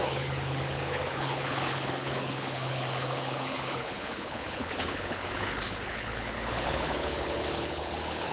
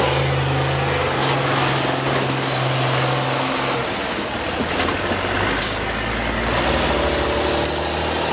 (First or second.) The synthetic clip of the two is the first